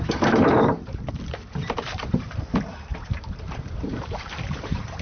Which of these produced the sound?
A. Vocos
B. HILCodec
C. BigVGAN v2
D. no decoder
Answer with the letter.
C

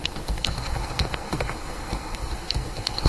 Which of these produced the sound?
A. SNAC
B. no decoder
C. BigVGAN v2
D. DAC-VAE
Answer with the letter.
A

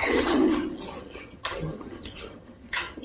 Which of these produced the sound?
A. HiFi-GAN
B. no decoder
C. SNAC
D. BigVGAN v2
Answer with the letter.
A